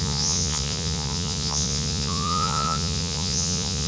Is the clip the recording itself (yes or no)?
no